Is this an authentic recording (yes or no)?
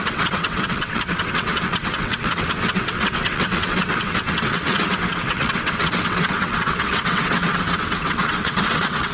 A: no